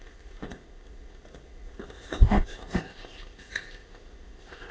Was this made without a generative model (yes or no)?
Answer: no